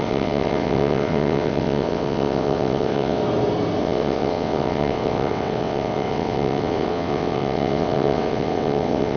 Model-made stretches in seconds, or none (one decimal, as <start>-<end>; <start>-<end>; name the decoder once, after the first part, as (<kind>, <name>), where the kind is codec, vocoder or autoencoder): 0.0-3.2 (vocoder, WaveNeXt); 3.8-9.2